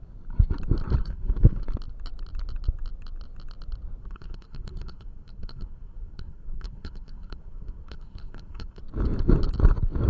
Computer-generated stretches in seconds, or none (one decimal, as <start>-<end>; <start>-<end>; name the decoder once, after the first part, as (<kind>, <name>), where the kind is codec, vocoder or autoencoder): 1.0-1.6 (codec, SNAC); 4.0-8.8